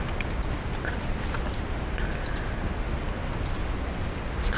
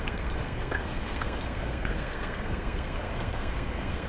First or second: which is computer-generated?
second